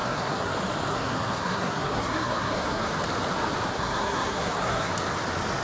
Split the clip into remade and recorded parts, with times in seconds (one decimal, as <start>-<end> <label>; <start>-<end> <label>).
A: 0.0-0.5 remade; 0.5-0.9 recorded; 0.9-2.9 remade; 2.9-3.7 recorded; 3.7-4.9 remade; 4.9-5.6 recorded